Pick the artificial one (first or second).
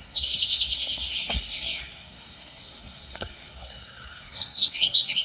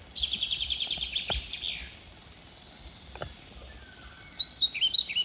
first